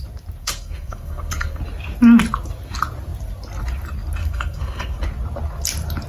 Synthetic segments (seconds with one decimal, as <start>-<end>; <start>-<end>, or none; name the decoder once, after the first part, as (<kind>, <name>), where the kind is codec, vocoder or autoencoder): 0.4-1.6 (codec, SNAC); 4.2-5.0